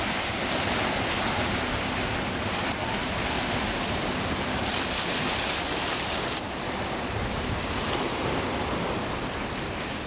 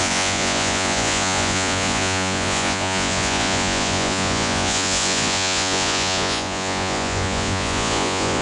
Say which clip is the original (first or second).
first